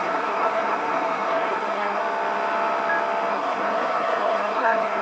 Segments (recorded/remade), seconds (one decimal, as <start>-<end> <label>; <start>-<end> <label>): 0.0-2.0 remade; 2.0-3.3 recorded; 3.3-5.0 remade